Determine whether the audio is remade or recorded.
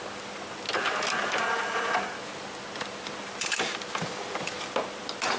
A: recorded